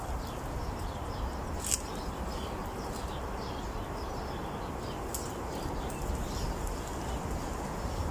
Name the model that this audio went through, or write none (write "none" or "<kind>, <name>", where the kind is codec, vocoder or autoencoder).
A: none